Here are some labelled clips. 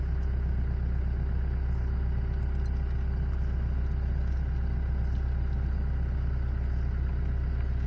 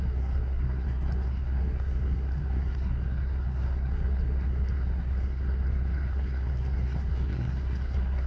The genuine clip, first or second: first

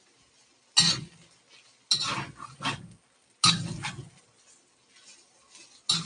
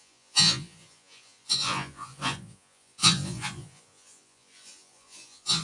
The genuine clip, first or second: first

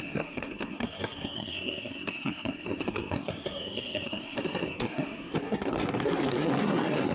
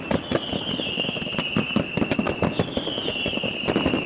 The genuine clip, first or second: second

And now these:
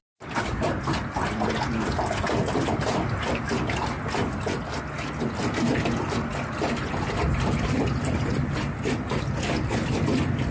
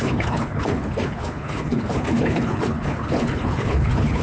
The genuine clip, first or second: first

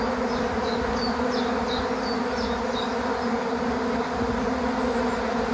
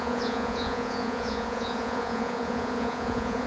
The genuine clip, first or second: first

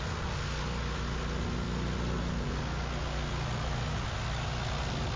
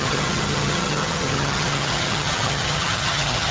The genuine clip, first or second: first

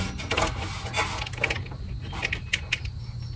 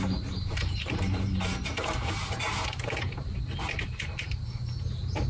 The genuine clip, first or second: first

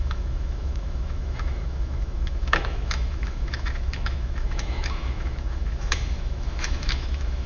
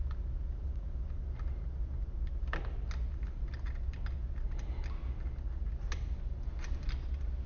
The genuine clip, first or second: second